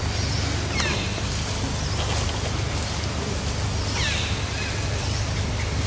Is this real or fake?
real